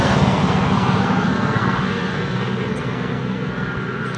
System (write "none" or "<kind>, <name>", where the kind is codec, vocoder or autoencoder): codec, SNAC